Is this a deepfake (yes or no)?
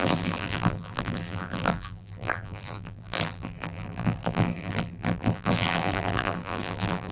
yes